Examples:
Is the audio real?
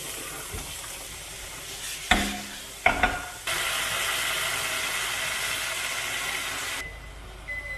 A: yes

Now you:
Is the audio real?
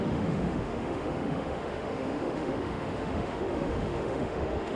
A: no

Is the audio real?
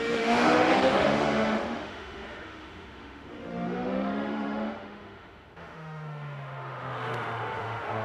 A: no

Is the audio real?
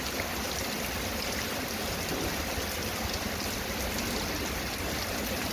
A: yes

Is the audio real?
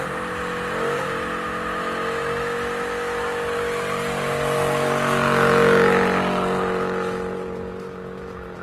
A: yes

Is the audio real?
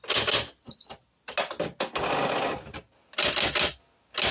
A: yes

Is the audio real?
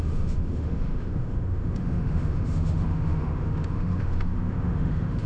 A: no